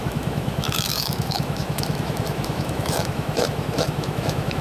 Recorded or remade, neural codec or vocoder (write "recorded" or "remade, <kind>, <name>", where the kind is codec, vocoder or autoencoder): remade, autoencoder, DAC-VAE